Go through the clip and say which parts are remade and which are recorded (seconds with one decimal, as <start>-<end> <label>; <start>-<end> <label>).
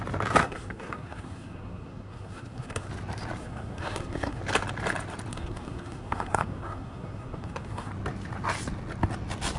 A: 0.0-0.4 recorded; 0.4-2.9 remade; 2.9-3.4 recorded; 3.4-4.4 remade; 4.4-5.3 recorded; 5.3-7.9 remade; 7.9-9.6 recorded